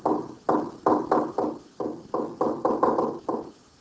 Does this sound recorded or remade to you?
recorded